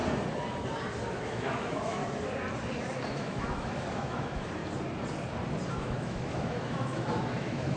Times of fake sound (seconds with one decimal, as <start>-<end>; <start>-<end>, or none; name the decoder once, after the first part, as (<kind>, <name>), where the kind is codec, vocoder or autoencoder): 1.1-2.0 (autoencoder, DAC-VAE); 3.1-4.6; 5.7-7.8